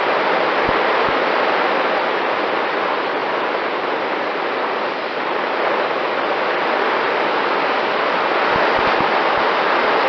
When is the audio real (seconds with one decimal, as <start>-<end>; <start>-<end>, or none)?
0.0-10.1

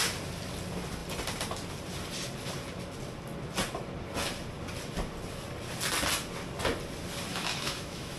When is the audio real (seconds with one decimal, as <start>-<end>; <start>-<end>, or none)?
0.0-7.3

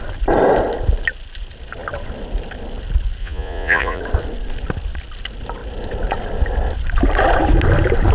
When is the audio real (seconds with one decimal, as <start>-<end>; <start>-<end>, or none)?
0.0-3.2; 4.0-8.1

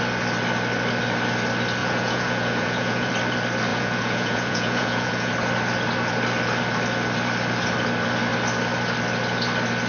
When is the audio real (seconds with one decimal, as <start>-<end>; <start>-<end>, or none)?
0.0-1.8; 3.1-3.7; 5.3-9.9

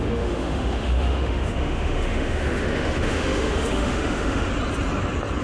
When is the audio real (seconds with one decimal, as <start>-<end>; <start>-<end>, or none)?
4.5-5.4